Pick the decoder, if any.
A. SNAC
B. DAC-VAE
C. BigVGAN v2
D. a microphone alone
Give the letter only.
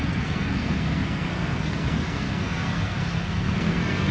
A